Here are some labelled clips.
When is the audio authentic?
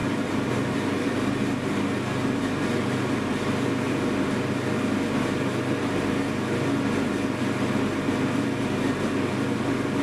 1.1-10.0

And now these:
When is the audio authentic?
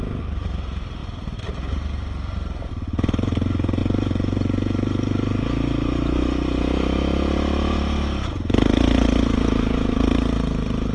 0.0-10.9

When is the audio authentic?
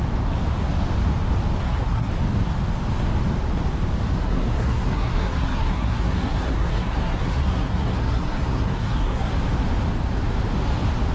0.0-1.6; 2.1-4.1; 9.3-11.1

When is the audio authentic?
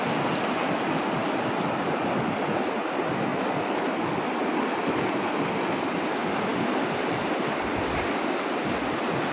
0.0-9.3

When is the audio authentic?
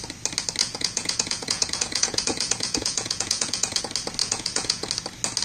0.0-0.6; 3.8-4.2; 4.9-5.4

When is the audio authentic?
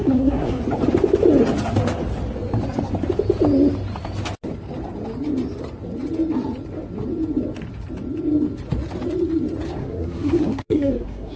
0.6-9.8